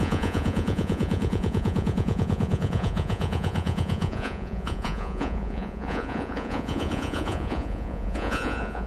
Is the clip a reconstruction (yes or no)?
yes